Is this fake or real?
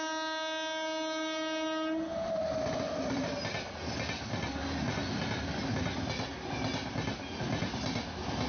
real